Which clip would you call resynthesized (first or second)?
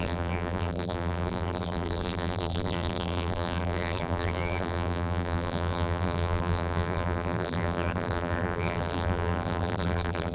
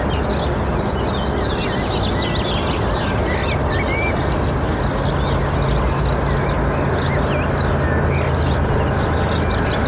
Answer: first